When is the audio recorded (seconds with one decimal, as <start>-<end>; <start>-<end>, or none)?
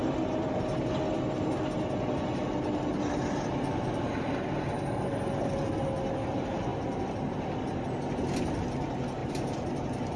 0.6-9.2